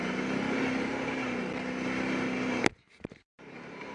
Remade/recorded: recorded